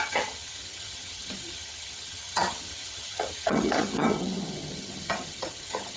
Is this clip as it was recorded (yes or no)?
no